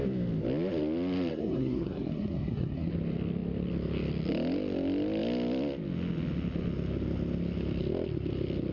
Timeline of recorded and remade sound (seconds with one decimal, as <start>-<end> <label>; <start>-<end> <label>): 0.0-1.3 recorded; 1.3-2.9 remade; 2.9-8.7 recorded